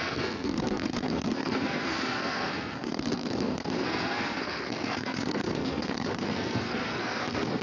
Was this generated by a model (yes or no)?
yes